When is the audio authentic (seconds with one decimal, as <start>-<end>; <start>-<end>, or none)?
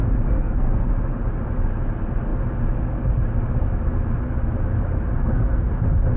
0.9-5.2; 5.7-6.2